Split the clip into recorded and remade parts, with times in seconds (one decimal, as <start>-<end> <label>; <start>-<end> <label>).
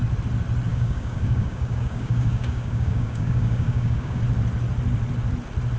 0.0-0.7 recorded; 0.7-4.2 remade; 4.2-5.8 recorded